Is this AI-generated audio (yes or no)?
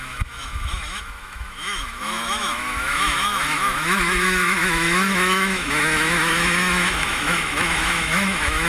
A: yes